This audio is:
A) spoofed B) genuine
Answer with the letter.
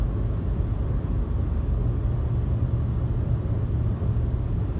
B